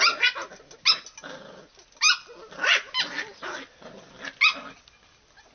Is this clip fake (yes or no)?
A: no